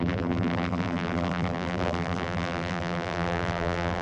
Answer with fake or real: fake